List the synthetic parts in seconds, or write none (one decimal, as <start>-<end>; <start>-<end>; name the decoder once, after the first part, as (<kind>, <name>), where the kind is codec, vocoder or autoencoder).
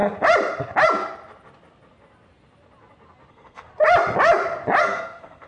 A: 3.3-3.7 (codec, SNAC); 4.8-5.5